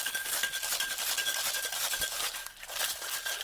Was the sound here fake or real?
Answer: real